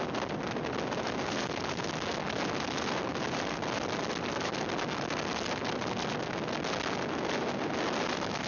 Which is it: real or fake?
real